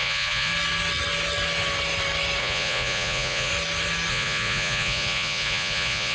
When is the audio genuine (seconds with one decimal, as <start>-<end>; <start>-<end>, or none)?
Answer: 0.5-2.4; 3.5-4.1